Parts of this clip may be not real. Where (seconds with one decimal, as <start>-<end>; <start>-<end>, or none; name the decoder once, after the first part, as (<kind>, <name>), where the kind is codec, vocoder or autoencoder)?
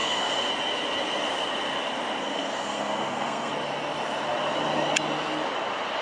0.0-0.5 (codec, SNAC); 2.2-3.5